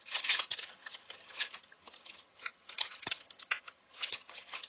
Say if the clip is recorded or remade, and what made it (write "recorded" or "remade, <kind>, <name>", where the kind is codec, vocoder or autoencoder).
remade, vocoder, HiFi-GAN